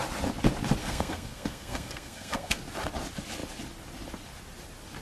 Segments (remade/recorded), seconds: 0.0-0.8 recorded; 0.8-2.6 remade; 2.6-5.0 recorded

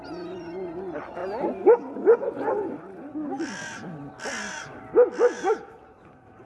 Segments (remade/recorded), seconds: 0.0-6.5 recorded

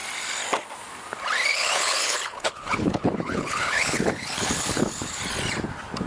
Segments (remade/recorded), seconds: 0.0-1.5 recorded; 1.5-5.2 remade; 5.2-6.1 recorded

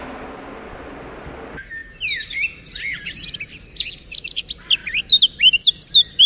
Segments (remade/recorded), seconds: 0.0-6.3 recorded

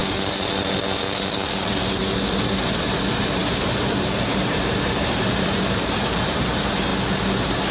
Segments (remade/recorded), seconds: 0.0-3.2 recorded; 3.2-6.9 remade; 6.9-7.7 recorded

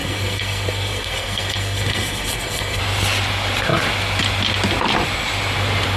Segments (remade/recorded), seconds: 0.0-2.8 remade; 2.8-6.0 recorded

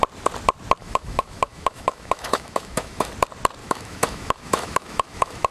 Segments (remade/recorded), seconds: 0.0-0.8 recorded; 0.8-3.1 remade; 3.1-3.6 recorded; 3.6-5.5 remade